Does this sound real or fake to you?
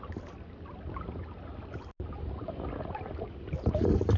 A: real